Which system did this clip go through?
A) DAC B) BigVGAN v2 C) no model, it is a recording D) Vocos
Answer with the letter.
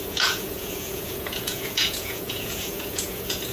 D